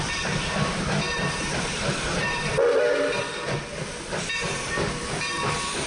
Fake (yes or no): yes